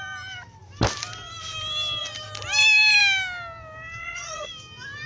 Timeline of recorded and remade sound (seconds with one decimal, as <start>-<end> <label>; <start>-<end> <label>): 0.0-4.0 recorded; 4.0-4.5 remade; 4.5-5.1 recorded